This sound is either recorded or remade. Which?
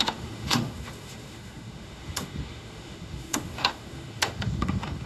remade